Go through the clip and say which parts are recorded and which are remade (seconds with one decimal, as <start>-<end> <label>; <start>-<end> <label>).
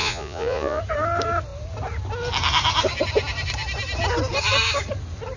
0.0-0.8 remade; 0.8-5.4 recorded